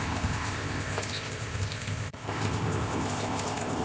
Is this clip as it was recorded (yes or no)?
no